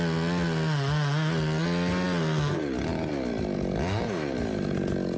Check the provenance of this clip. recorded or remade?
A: recorded